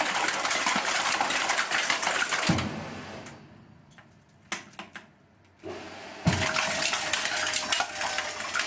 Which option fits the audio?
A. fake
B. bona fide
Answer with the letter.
B